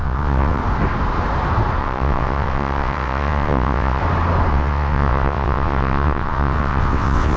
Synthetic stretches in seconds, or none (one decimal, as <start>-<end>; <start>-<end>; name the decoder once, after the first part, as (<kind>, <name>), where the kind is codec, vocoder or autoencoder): 0.0-0.6 (vocoder, WaveNeXt); 1.8-4.0; 4.5-7.4